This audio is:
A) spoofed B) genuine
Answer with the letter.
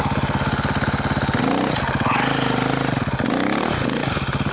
B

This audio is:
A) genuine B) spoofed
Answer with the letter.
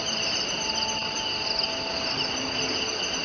A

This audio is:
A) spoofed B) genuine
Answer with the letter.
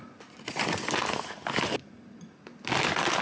B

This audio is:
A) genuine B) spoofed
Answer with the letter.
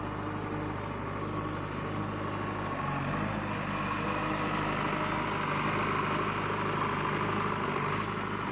A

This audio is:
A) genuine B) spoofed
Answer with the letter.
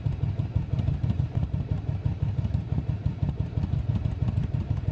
B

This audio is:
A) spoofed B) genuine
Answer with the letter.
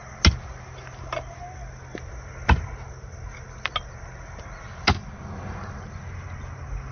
B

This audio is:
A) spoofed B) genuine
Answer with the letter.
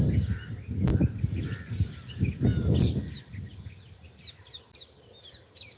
B